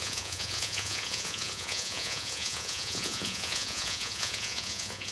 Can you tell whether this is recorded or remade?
remade